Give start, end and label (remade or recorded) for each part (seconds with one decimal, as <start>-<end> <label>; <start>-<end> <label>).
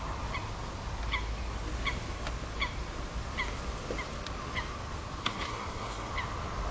0.0-5.2 recorded; 5.2-6.1 remade; 6.1-6.7 recorded